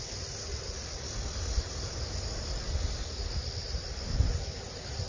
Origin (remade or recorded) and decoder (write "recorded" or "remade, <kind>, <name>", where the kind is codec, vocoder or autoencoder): recorded